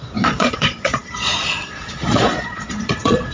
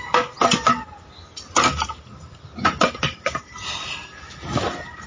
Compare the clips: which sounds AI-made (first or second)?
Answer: first